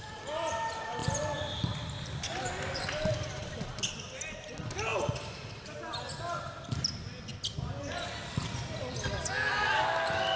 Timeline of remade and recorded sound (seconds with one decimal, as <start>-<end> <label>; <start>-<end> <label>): 0.0-10.4 recorded